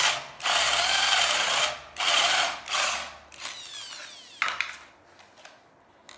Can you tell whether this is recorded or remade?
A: recorded